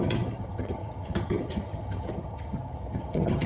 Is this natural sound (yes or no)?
no